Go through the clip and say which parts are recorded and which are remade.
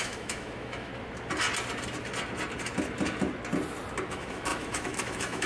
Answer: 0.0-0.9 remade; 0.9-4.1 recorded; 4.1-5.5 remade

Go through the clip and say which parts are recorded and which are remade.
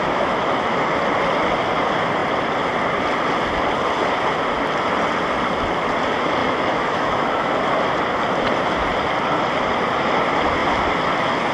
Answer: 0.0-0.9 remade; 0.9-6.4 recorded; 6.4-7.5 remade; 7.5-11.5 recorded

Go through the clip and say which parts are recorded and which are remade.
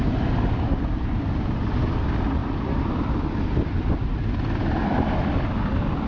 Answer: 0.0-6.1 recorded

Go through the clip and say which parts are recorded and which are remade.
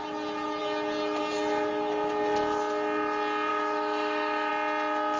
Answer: 0.0-3.5 recorded; 3.5-4.5 remade; 4.5-5.2 recorded